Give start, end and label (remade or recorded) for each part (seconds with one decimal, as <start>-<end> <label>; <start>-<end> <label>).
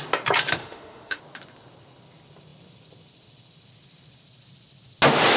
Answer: 0.0-0.6 recorded; 0.6-1.2 remade; 1.2-5.4 recorded